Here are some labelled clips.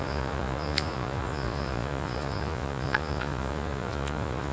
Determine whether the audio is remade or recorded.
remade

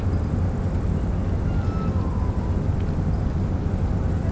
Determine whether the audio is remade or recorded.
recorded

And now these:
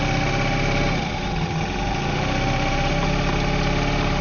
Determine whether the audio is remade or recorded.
recorded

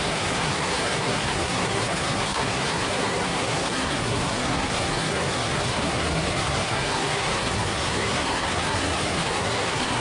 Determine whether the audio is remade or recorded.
remade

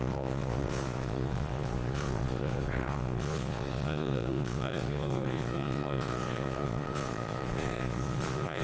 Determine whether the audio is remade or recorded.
remade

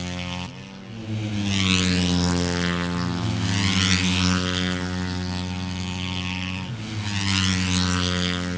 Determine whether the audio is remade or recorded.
recorded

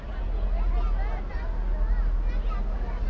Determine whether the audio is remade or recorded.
recorded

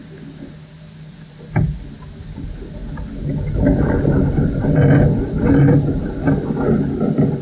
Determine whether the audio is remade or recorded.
recorded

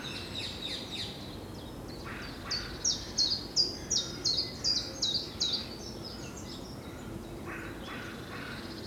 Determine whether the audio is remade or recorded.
recorded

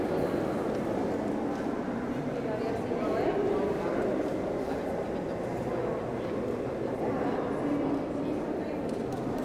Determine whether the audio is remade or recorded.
recorded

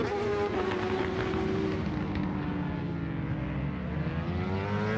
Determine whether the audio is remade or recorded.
recorded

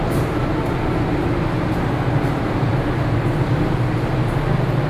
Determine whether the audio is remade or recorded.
recorded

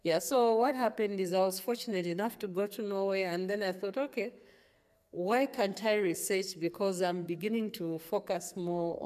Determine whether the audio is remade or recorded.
remade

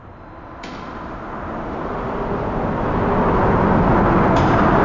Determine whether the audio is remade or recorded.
recorded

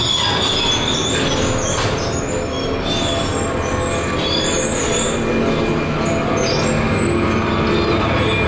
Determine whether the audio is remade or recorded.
recorded